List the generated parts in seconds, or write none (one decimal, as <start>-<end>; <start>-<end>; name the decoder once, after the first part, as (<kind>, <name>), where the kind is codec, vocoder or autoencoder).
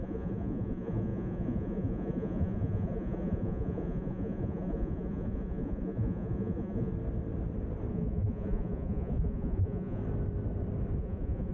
0.0-6.9 (vocoder, Vocos); 7.9-10.0; 11.0-11.5